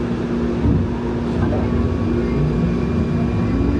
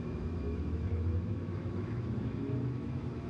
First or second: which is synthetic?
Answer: second